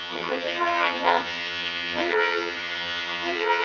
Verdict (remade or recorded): remade